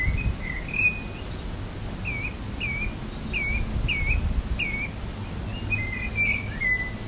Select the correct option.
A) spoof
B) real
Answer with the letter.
B